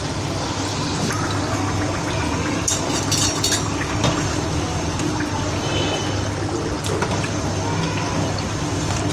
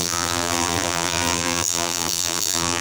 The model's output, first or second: second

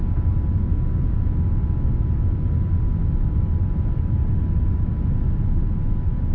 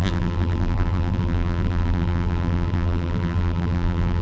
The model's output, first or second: second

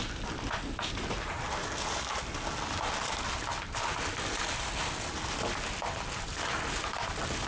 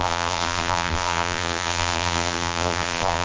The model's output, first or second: second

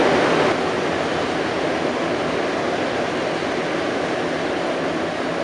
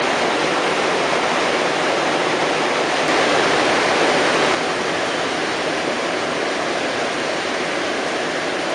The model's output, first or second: second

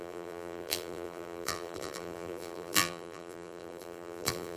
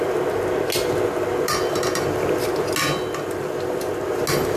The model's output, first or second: first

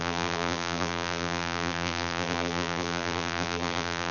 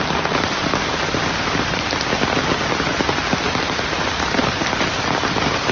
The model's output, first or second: first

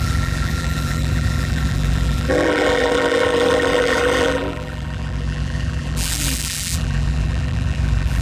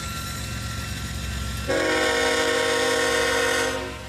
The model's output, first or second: first